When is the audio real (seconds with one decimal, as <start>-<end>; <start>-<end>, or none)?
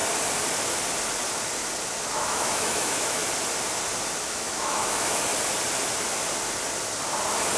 0.0-2.0; 3.2-4.2; 5.3-7.6